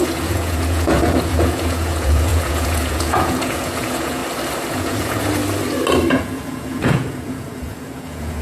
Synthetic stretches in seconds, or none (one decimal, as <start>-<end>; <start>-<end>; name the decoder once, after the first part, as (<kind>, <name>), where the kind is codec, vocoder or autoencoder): 0.0-4.2 (vocoder, Vocos); 4.7-5.4; 6.1-8.4